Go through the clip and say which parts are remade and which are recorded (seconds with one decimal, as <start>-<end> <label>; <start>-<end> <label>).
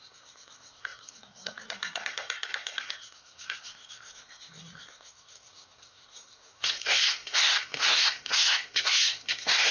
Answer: 0.0-9.7 remade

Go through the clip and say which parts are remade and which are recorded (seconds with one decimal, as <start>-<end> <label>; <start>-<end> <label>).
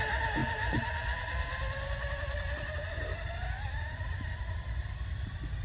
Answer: 0.0-5.6 recorded